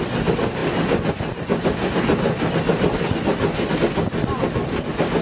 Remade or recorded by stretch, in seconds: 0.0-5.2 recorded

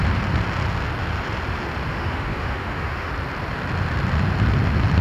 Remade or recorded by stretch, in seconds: 0.0-1.9 recorded; 1.9-3.1 remade; 3.1-5.0 recorded

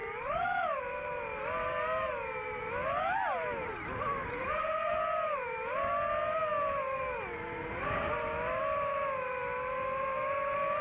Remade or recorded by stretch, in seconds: 0.0-10.8 recorded

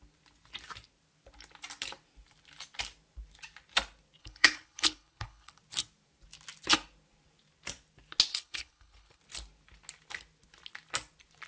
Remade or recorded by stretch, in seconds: 0.0-4.2 recorded; 4.2-5.5 remade; 5.5-8.3 recorded; 8.3-9.2 remade; 9.2-11.5 recorded